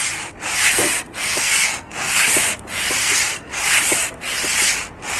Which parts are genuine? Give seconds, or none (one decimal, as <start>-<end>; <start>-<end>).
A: 0.0-0.7; 2.3-3.0; 3.6-5.2